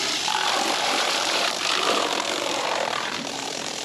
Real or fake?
fake